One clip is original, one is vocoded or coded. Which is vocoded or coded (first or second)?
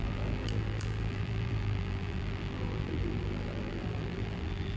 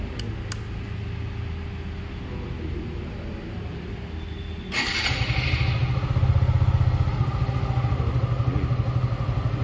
first